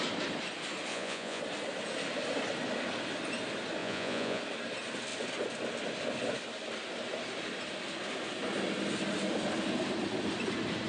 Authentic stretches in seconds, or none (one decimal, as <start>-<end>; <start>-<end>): 0.0-0.9; 1.4-3.8; 4.4-10.9